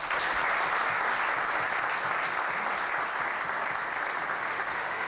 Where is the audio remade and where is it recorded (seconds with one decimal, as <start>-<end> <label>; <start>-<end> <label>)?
0.0-4.3 recorded; 4.3-5.1 remade